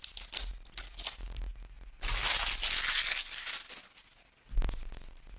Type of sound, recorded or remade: recorded